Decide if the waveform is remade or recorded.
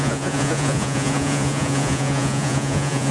remade